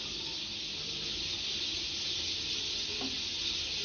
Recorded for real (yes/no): yes